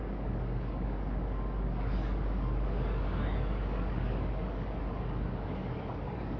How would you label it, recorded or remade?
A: remade